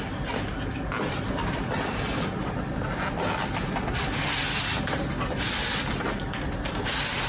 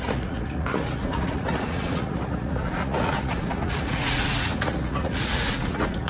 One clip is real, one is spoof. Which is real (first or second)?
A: first